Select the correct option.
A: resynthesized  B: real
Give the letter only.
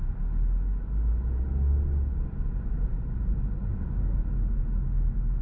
B